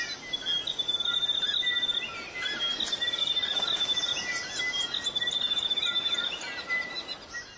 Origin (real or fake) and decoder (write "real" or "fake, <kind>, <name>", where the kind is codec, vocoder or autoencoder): real